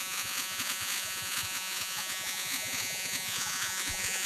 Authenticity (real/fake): fake